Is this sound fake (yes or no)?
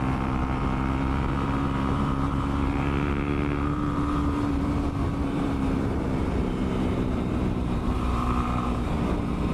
yes